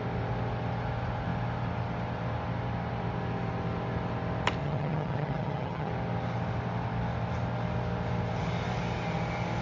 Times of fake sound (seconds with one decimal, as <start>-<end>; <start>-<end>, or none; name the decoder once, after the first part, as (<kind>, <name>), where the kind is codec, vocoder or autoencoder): 4.6-5.9 (vocoder, HiFi-GAN)